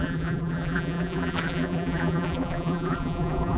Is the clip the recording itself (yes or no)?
no